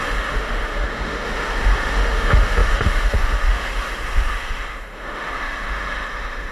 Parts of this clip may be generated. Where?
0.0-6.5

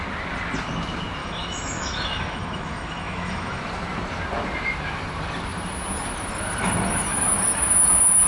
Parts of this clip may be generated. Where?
1.2-3.6

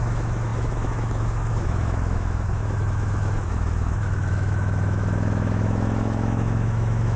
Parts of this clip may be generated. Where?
0.0-7.2

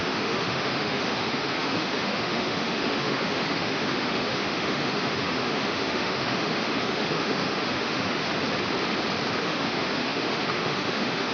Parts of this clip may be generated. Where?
0.0-8.2; 9.4-11.3

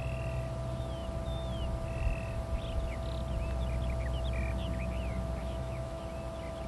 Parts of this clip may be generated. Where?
5.4-6.0